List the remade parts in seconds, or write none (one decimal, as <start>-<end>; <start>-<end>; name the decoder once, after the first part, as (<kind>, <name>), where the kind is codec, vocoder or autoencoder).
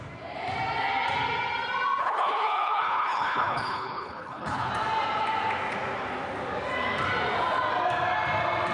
2.0-4.7 (codec, HILCodec)